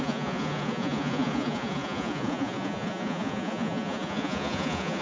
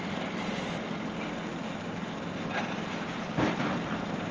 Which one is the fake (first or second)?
first